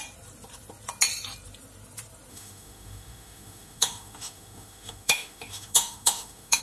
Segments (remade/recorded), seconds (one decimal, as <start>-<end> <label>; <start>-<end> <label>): 0.0-2.3 recorded; 2.3-6.6 remade

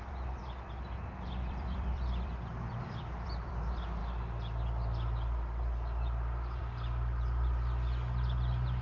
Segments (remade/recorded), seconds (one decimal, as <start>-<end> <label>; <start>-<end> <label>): 0.0-0.4 remade; 0.4-1.5 recorded; 1.5-4.0 remade; 4.0-6.6 recorded; 6.6-8.8 remade